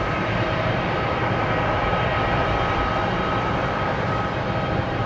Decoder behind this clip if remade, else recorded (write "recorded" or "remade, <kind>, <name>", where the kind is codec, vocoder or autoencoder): remade, vocoder, BigVGAN v2